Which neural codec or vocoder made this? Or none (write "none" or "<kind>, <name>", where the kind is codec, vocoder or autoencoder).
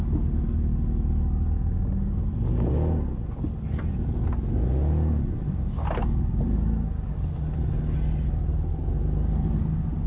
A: none